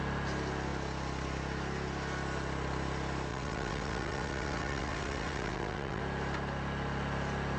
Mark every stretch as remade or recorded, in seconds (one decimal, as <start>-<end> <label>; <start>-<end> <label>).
0.0-3.3 recorded; 3.3-6.0 remade; 6.0-7.6 recorded